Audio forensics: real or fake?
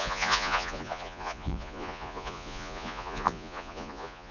fake